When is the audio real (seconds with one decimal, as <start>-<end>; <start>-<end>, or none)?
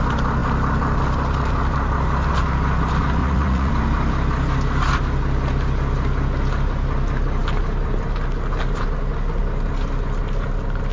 0.0-3.2; 3.7-10.9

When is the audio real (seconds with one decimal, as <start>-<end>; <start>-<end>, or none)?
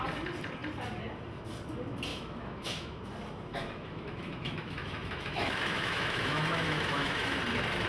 0.0-2.1; 3.0-3.5; 7.4-7.9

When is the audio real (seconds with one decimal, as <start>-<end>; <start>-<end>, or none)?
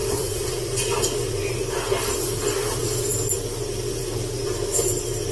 0.8-5.3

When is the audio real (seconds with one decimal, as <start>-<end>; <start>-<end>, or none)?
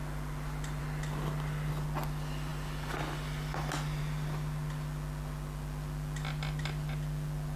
0.0-7.6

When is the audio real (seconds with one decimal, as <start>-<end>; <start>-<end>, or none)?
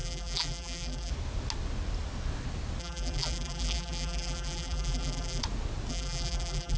1.1-2.8; 5.4-5.9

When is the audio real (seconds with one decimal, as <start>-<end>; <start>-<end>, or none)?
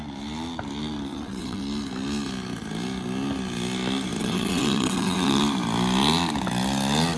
0.0-1.1; 1.6-4.2; 5.4-7.2